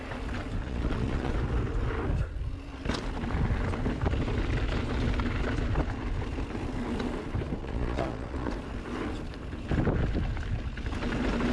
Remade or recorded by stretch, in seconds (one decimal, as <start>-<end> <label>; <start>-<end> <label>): 0.0-0.6 recorded; 0.6-1.3 remade; 1.3-7.6 recorded; 7.6-8.5 remade; 8.5-11.5 recorded